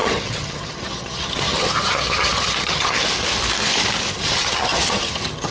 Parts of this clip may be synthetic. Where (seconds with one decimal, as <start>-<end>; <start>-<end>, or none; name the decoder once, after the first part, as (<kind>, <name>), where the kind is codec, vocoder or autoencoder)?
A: 0.0-3.0 (vocoder, HiFi-GAN); 4.1-5.5